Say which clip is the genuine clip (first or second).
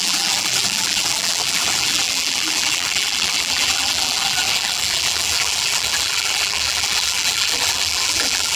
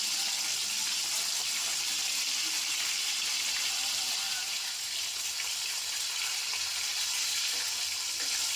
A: second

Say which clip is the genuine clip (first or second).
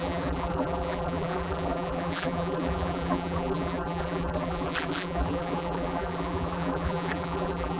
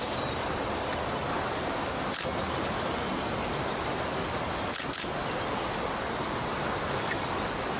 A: second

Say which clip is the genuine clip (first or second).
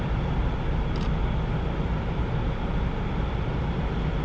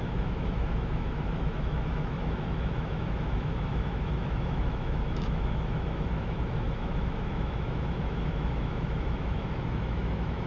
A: first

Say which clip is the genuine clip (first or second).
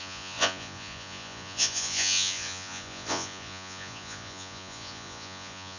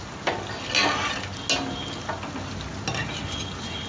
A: second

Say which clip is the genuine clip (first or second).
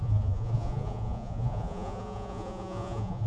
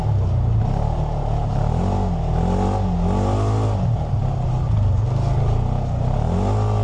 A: second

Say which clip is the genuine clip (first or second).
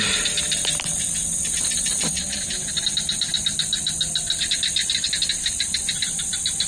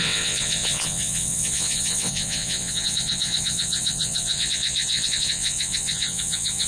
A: first